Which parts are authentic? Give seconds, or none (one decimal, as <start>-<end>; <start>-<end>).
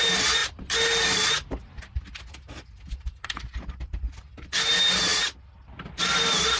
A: 0.0-6.6